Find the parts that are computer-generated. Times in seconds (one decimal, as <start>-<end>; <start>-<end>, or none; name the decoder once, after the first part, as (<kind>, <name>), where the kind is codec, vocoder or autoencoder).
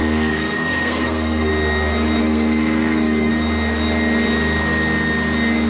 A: 0.0-1.5 (codec, SNAC); 2.2-3.3